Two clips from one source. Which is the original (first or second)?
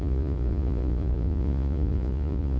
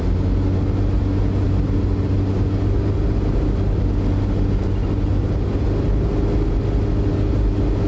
second